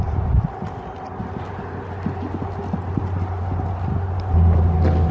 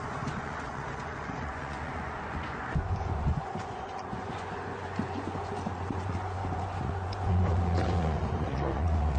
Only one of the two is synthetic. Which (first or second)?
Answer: second